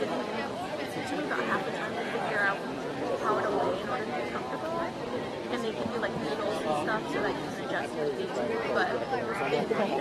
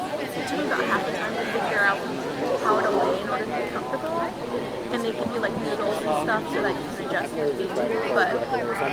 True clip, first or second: second